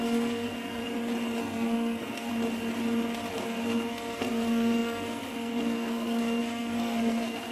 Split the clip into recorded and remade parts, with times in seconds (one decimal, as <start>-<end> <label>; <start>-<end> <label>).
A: 0.0-0.8 remade; 0.8-1.4 recorded; 1.4-2.3 remade; 2.3-3.3 recorded; 3.3-7.5 remade